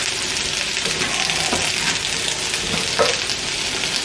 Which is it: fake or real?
real